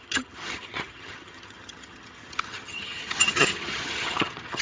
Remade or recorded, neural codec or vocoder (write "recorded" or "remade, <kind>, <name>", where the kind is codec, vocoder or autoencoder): remade, vocoder, HiFi-GAN